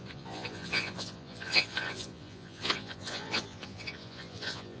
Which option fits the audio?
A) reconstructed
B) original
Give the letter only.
A